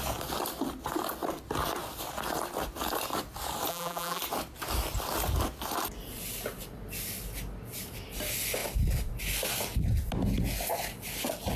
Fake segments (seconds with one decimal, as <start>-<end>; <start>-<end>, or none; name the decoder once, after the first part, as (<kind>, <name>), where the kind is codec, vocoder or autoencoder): 3.7-4.2 (vocoder, BigVGAN v2)